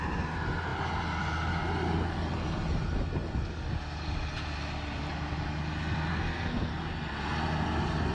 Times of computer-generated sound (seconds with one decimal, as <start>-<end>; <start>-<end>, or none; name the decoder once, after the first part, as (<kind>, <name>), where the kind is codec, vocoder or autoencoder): 6.1-6.7 (codec, SNAC)